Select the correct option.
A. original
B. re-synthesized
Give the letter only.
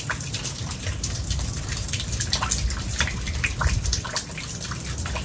A